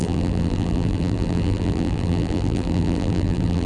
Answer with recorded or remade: remade